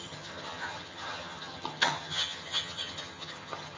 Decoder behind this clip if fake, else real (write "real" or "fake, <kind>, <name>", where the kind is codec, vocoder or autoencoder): fake, vocoder, HiFi-GAN